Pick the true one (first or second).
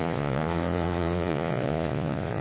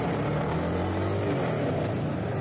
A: second